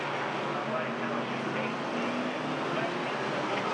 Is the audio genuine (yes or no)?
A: yes